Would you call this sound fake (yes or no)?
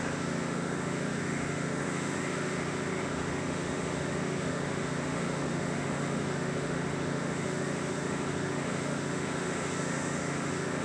yes